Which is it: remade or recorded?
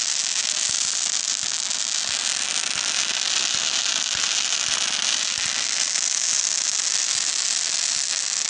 recorded